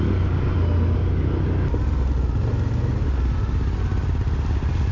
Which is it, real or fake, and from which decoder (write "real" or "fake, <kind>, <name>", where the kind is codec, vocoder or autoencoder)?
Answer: real